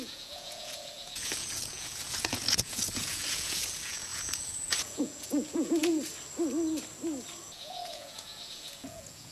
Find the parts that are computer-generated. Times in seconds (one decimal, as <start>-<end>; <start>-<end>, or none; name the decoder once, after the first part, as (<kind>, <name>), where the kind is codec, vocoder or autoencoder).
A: 0.0-6.0 (vocoder, Vocos); 7.4-9.3